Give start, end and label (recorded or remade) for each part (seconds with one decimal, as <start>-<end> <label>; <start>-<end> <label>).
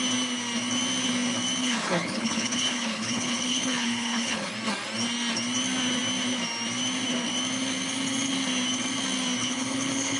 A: 0.0-1.6 recorded; 1.6-4.5 remade; 4.5-9.4 recorded; 9.4-10.2 remade